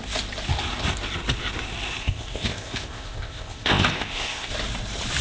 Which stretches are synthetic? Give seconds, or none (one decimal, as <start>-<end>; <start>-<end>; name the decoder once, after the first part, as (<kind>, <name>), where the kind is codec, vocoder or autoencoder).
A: 2.0-4.5 (codec, ZipCodec)